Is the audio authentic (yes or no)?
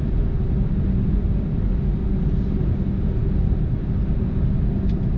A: yes